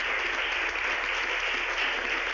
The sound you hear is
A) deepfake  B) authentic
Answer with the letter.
B